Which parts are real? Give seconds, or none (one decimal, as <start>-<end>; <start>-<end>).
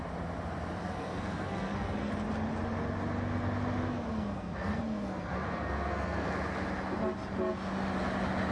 0.0-0.8; 2.1-4.1; 6.3-8.5